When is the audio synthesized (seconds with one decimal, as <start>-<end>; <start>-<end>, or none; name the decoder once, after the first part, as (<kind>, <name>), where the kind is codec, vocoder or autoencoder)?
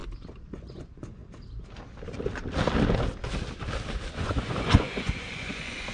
0.6-1.2 (vocoder, Vocos); 4.1-5.9